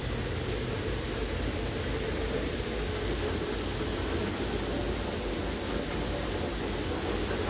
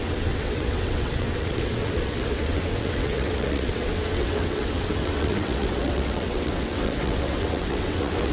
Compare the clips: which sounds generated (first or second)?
second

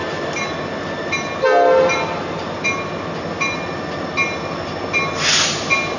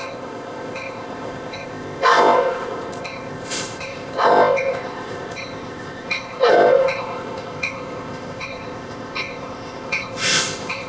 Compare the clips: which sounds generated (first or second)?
second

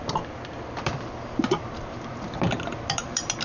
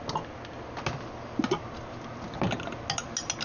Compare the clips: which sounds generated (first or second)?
first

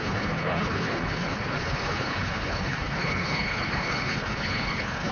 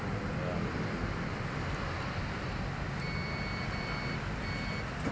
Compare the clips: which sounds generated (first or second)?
first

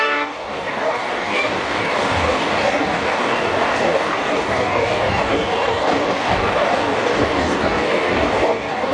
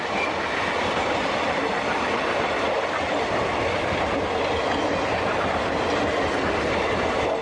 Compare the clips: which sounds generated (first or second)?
first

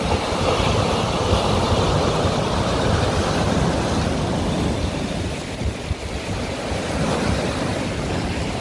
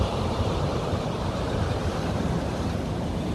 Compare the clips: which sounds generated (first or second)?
second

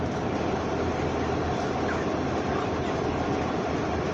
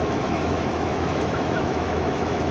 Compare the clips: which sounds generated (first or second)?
second